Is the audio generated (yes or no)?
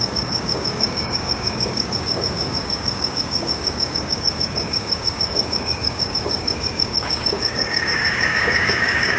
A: yes